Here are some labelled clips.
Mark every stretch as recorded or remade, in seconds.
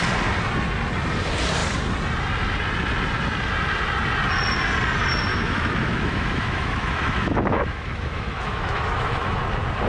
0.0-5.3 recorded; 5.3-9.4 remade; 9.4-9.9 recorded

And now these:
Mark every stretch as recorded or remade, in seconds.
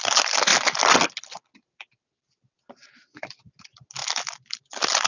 0.0-5.1 recorded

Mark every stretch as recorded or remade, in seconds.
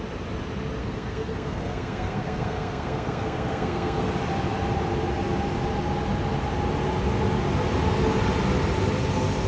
0.0-0.8 recorded; 0.8-4.1 remade; 4.1-9.5 recorded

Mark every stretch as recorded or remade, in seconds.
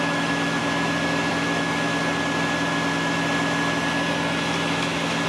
0.0-0.6 remade; 0.6-1.3 recorded; 1.3-1.9 remade; 1.9-4.7 recorded; 4.7-5.3 remade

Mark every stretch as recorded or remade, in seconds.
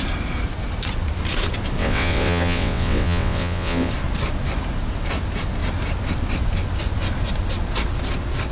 0.0-1.8 recorded; 1.8-3.9 remade; 3.9-8.5 recorded